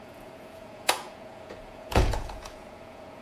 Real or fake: fake